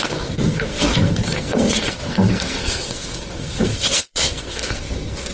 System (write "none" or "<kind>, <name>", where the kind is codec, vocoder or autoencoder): codec, SNAC